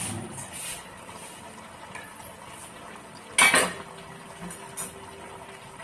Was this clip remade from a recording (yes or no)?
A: no